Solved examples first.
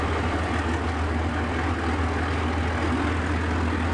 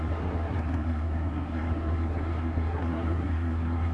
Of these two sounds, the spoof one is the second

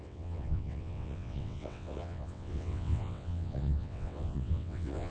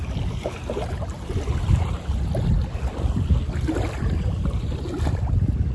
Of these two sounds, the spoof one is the first